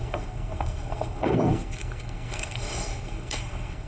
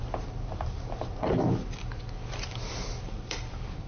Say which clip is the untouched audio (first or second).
second